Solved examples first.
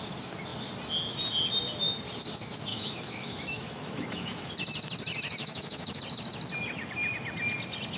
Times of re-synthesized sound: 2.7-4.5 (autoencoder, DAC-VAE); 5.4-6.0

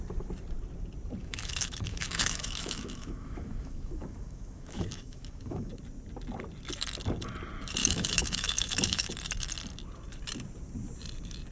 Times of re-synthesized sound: 1.2-5.7 (autoencoder, DAC-VAE); 7.8-9.1

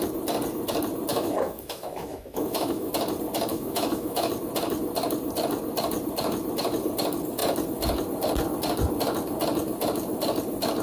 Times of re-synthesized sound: 1.1-2.9 (autoencoder, DAC-VAE); 3.5-4.3

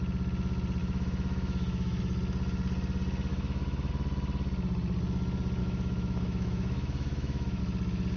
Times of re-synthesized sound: 0.8-2.0 (autoencoder, DAC-VAE); 3.3-3.9; 5.6-7.6

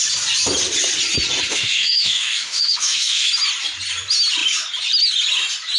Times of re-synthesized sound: 1.5-3.3 (autoencoder, DAC-VAE)

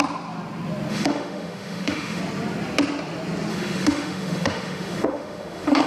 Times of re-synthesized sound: 0.9-2.2 (autoencoder, DAC-VAE); 3.5-5.9

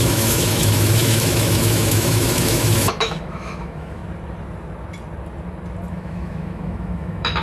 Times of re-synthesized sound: 0.0-4.0 (autoencoder, DAC-VAE); 5.9-7.4

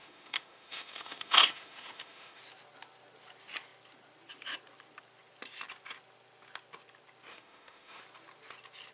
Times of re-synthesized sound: 0.0-2.4 (autoencoder, DAC-VAE); 7.3-8.0